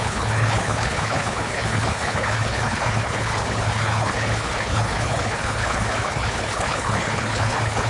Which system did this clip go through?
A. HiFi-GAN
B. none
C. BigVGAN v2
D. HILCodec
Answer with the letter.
D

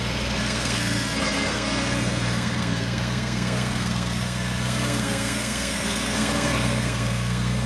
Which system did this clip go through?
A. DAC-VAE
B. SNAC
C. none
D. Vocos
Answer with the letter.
B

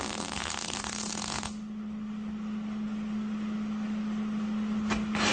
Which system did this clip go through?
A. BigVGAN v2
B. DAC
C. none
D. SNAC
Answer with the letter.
C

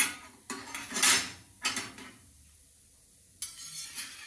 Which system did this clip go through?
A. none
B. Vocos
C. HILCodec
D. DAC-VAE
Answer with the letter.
A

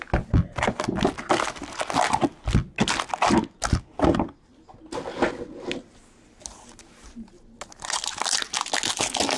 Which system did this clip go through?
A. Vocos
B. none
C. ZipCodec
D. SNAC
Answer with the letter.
B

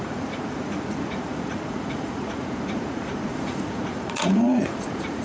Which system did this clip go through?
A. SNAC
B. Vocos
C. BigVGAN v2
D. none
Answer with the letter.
B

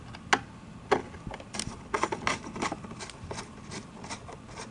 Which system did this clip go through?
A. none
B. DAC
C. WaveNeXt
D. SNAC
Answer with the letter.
A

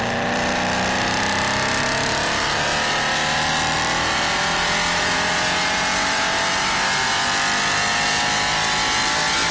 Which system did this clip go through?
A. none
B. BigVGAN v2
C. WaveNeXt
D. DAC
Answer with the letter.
A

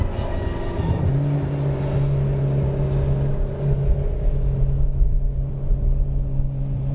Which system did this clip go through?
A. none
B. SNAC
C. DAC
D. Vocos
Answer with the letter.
A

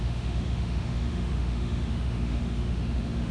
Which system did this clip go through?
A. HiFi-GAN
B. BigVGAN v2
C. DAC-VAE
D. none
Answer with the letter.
C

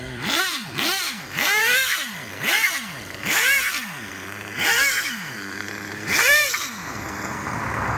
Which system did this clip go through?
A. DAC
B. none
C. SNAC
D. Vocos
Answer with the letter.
C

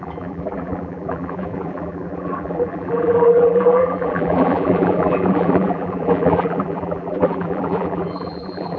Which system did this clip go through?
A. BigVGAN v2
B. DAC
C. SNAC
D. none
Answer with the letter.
A